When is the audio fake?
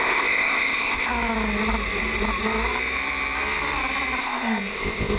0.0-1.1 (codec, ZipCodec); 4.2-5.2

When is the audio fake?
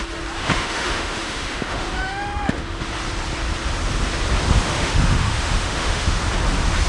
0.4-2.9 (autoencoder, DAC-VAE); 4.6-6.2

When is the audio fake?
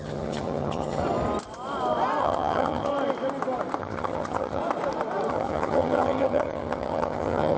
0.0-1.0 (vocoder, HiFi-GAN); 2.2-2.9; 3.8-4.6; 5.3-7.6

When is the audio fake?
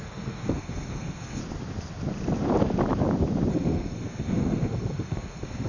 0.0-1.4 (codec, SNAC); 3.5-5.7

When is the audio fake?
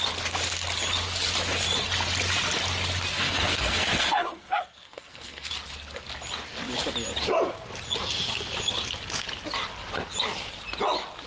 3.1-5.5 (codec, SNAC)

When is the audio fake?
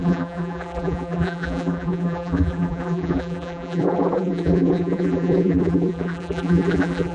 0.0-7.1 (vocoder, BigVGAN v2)